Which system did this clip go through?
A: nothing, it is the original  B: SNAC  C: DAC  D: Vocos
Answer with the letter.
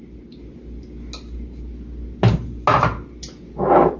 A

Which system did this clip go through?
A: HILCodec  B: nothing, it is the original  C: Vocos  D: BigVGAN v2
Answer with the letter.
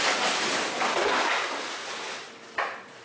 B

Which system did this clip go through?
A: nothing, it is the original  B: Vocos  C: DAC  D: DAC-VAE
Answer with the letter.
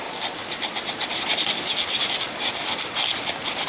A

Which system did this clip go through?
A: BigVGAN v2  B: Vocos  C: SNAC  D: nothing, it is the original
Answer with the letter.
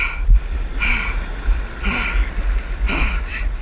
D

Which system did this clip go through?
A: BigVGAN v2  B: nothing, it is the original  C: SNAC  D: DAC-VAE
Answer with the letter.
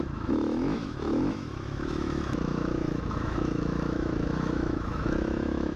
D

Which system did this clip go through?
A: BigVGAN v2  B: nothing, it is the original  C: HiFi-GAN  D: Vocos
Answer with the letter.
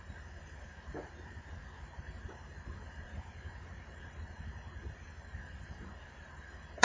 A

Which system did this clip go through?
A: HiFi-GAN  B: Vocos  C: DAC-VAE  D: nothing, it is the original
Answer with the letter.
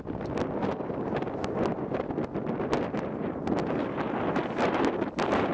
D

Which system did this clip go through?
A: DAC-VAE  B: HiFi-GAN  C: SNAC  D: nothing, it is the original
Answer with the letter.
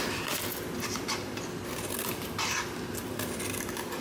D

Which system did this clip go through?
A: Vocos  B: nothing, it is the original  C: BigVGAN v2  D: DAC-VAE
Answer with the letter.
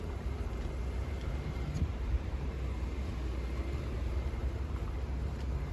C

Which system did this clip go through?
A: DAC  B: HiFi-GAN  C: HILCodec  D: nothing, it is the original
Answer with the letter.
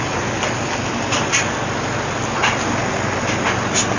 D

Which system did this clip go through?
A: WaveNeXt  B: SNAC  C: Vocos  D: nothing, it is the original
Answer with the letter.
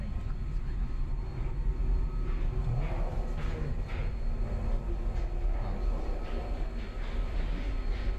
D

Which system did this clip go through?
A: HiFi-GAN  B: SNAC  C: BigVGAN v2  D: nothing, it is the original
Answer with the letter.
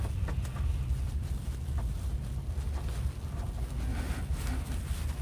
D